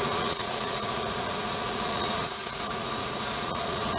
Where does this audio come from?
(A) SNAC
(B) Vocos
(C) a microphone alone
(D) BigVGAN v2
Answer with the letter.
B